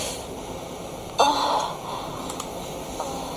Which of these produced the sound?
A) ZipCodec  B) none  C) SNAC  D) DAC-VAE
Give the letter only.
B